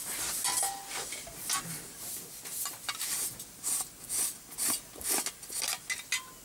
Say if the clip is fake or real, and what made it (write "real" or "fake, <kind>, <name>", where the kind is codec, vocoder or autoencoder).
real